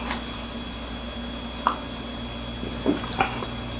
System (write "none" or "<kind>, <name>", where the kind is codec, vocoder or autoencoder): none